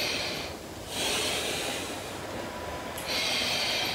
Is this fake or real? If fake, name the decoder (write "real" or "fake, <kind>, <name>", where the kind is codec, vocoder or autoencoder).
real